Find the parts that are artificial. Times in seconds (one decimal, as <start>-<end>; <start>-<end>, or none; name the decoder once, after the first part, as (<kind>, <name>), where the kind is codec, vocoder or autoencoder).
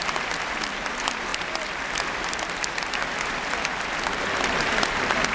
none